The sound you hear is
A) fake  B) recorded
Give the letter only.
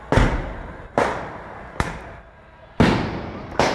B